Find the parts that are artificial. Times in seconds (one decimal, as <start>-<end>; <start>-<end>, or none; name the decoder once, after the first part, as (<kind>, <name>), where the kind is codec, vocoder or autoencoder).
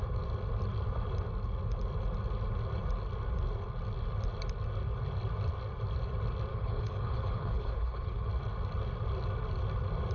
6.5-8.3 (codec, HILCodec)